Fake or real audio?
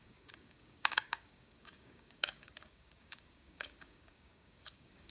fake